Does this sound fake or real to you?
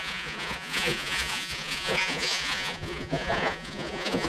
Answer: fake